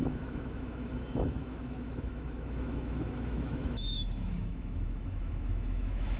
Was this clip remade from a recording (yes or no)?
yes